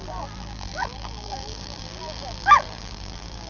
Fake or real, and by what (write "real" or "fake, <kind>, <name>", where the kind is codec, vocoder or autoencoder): fake, vocoder, BigVGAN v2